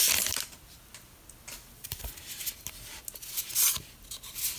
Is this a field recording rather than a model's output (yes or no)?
yes